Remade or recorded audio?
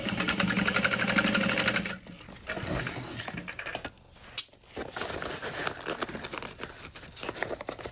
recorded